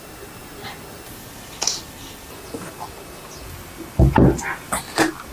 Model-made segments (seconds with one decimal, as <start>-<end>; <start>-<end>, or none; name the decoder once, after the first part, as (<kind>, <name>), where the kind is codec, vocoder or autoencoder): none